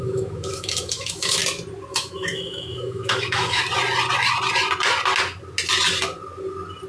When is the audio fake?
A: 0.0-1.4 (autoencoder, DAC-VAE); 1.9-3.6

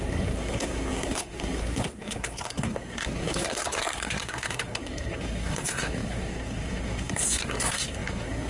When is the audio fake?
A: 0.0-8.5 (codec, SNAC)

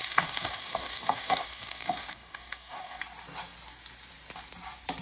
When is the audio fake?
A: 0.0-3.0 (codec, DAC)

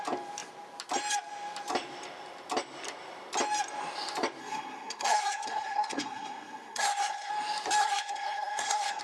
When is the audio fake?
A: 4.4-7.3 (codec, SNAC); 7.8-9.0

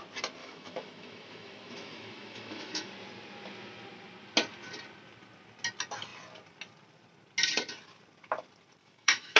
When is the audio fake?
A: 0.4-2.9 (autoencoder, DAC-VAE); 8.8-9.4

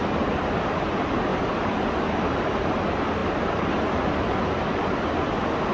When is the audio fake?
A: 1.3-2.0 (vocoder, BigVGAN v2)

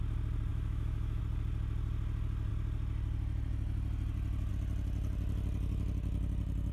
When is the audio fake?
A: 0.5-1.2 (autoencoder, DAC-VAE)